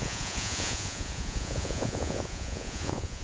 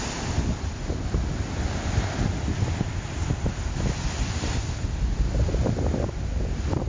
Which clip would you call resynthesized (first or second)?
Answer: first